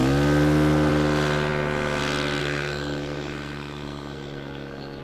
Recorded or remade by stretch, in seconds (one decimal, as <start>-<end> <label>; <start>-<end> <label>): 0.0-2.4 recorded; 2.4-5.0 remade